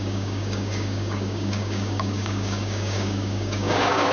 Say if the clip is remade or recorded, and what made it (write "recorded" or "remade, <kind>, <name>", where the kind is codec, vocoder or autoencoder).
remade, codec, DAC